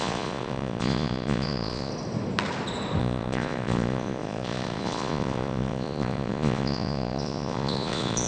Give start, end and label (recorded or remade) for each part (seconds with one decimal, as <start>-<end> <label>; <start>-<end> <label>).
0.0-1.9 remade; 1.9-3.0 recorded; 3.0-8.3 remade